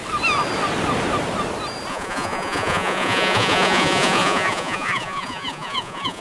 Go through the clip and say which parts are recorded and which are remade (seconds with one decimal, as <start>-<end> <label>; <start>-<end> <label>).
0.0-1.9 recorded; 1.9-6.2 remade